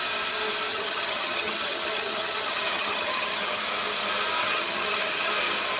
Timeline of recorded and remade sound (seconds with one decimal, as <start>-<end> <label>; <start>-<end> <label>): 0.0-0.7 recorded; 0.7-3.6 remade; 3.6-4.4 recorded; 4.4-5.3 remade; 5.3-5.8 recorded

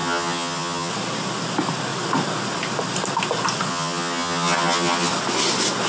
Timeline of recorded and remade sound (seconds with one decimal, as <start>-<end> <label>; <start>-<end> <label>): 0.0-0.9 remade; 0.9-3.7 recorded; 3.7-5.1 remade; 5.1-5.9 recorded

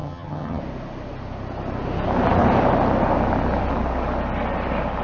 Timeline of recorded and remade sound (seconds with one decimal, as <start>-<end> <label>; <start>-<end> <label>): 0.0-0.6 remade; 0.6-5.0 recorded